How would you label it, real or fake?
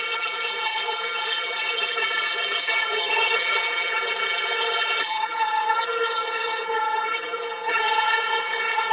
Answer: fake